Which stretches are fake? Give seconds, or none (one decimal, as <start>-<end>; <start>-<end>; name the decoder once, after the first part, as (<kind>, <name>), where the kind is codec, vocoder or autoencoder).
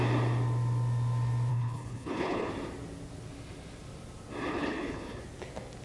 1.5-2.5 (codec, HILCodec); 4.5-5.2